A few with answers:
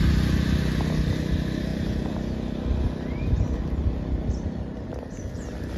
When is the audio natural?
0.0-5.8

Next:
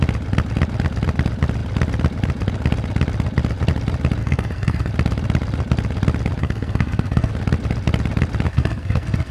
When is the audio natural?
0.0-4.2; 4.9-6.4; 7.3-8.5

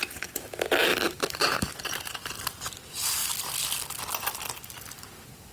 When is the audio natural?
0.0-0.9; 2.3-5.5

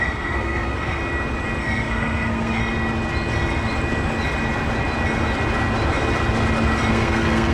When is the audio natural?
1.0-1.6; 2.6-6.9

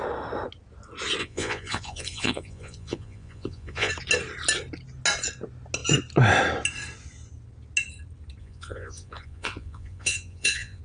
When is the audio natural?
0.0-1.2; 3.9-8.4

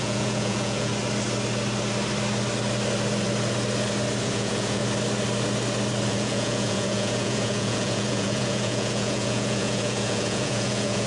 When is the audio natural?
0.9-4.2; 4.8-6.1

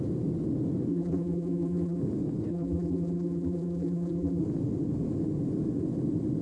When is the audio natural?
0.0-0.9; 2.0-2.5; 4.4-6.4